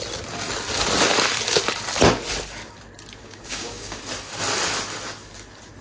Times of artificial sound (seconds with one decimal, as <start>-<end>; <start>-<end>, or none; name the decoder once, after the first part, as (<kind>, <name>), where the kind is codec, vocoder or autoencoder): 3.2-4.0 (codec, DAC)